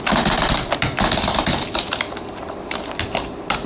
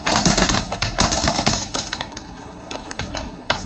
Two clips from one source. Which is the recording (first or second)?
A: first